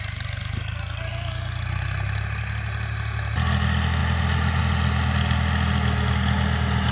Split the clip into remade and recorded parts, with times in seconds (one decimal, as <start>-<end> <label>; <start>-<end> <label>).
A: 0.0-6.9 recorded